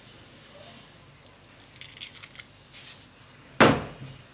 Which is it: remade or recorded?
recorded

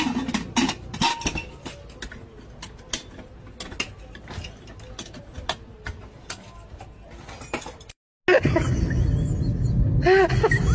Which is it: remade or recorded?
recorded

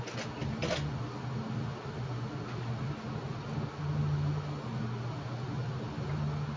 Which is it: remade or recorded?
recorded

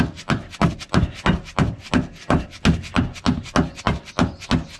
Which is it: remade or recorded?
recorded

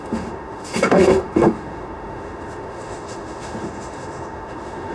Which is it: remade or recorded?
remade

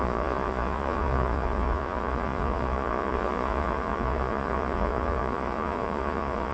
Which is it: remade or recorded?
remade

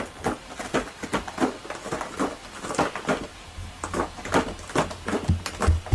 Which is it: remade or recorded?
recorded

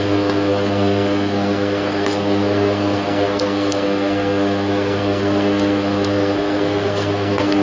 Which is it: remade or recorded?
remade